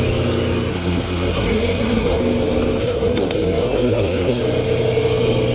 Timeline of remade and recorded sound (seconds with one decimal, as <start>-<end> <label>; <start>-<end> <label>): 0.0-0.7 recorded; 0.7-2.2 remade; 2.2-2.8 recorded; 2.8-4.4 remade; 4.4-5.5 recorded